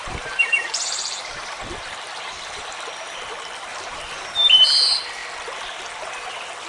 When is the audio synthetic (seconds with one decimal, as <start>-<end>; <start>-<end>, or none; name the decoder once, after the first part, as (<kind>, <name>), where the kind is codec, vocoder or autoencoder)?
0.0-1.4 (vocoder, BigVGAN v2); 3.7-4.6